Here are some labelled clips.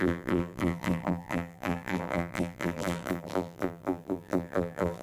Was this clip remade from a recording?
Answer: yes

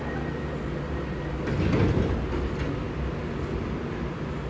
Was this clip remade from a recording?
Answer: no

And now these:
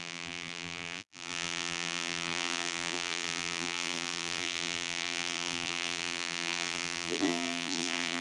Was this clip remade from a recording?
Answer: yes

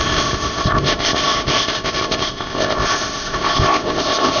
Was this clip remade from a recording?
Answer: yes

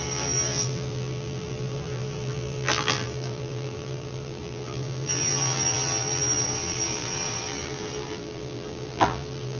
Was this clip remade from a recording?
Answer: yes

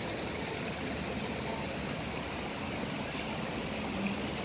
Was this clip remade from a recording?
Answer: no